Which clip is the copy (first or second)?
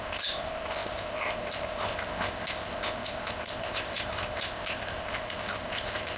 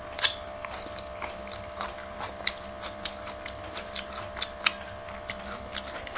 first